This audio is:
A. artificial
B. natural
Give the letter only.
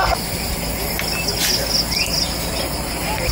B